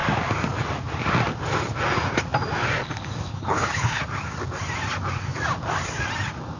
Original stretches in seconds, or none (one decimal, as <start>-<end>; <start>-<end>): 0.0-3.3; 4.0-6.6